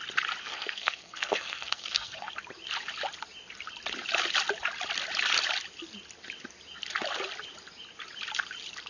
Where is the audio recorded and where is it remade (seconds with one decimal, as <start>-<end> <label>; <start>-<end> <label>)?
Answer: 0.0-0.4 recorded; 0.4-2.3 remade; 2.3-8.9 recorded